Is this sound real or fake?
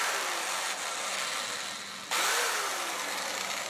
real